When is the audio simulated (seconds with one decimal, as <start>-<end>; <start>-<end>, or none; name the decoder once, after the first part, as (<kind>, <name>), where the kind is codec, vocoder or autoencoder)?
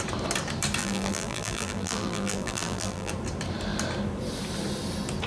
0.8-3.1 (vocoder, BigVGAN v2)